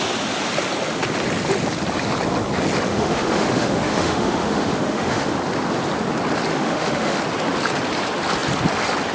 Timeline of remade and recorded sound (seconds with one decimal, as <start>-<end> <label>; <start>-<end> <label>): 0.0-2.9 recorded; 2.9-5.4 remade; 5.4-6.5 recorded; 6.5-7.2 remade; 7.2-9.1 recorded